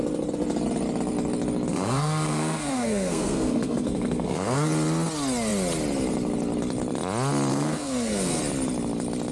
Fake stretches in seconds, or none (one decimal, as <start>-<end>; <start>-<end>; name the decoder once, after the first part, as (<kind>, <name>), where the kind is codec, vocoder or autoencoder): 1.7-4.7 (codec, SNAC); 7.5-8.4